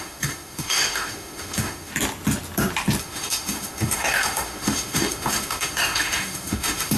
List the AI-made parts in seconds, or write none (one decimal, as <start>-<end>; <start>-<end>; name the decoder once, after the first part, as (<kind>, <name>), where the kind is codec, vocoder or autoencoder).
0.0-1.9 (autoencoder, DAC-VAE); 3.0-7.0